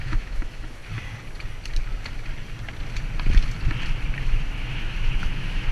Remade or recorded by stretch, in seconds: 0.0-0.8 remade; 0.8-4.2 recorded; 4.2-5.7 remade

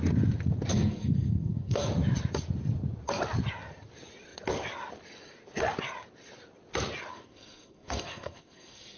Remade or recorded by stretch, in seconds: 0.0-0.7 recorded; 0.7-1.9 remade; 1.9-7.1 recorded; 7.1-9.0 remade

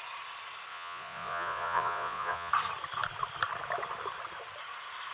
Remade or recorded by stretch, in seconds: 0.0-0.7 recorded; 0.7-2.5 remade; 2.5-5.1 recorded